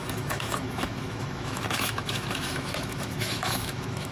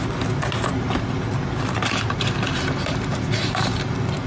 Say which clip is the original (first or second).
second